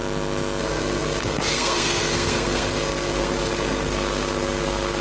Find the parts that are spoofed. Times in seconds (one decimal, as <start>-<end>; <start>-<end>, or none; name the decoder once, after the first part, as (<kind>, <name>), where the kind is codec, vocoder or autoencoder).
0.6-5.0 (codec, SNAC)